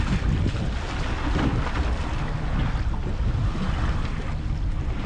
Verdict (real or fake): real